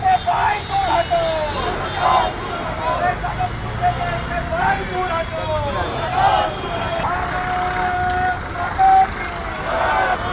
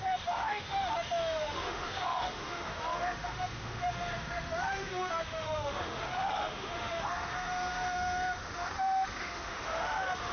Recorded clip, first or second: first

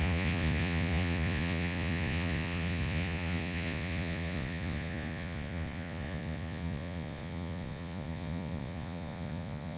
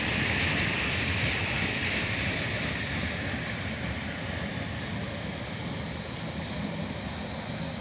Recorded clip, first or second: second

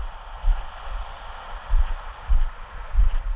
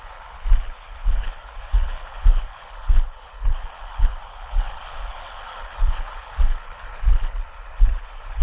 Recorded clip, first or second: first